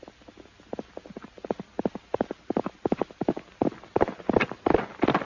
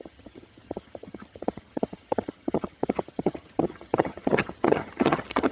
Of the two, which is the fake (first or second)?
second